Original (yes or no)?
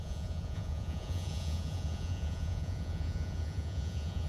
no